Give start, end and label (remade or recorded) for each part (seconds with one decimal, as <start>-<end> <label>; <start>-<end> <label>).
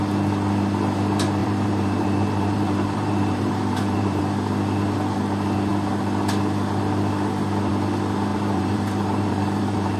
0.0-1.4 recorded; 1.4-4.2 remade; 4.2-8.3 recorded; 8.3-10.0 remade